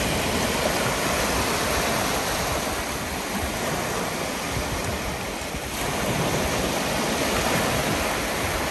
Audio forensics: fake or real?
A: real